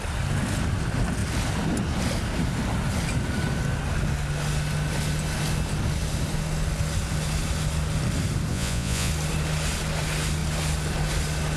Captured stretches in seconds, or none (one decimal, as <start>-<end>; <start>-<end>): 0.0-8.5; 9.1-11.6